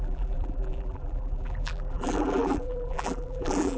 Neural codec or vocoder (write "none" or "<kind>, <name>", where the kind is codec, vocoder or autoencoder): vocoder, BigVGAN v2